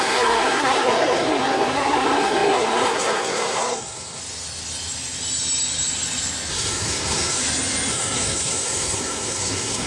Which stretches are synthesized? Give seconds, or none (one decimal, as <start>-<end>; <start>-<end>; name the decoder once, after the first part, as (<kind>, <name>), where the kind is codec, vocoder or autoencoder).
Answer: 0.0-4.2 (codec, SNAC); 6.5-7.4; 7.9-9.9